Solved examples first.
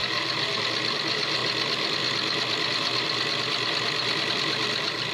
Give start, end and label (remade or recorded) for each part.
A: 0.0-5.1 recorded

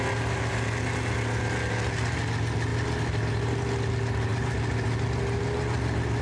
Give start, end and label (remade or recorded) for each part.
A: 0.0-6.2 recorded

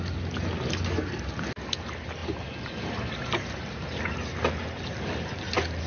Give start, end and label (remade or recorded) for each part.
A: 0.0-2.2 recorded; 2.2-4.0 remade; 4.0-5.9 recorded